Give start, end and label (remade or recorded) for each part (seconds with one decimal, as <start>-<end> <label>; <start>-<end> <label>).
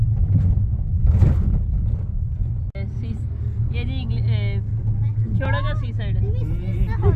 0.0-7.2 recorded